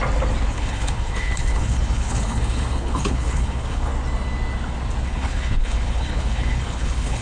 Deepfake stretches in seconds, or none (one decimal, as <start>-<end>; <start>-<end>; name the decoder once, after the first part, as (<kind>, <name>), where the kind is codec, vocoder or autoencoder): 0.5-3.9 (codec, HILCodec); 5.0-7.2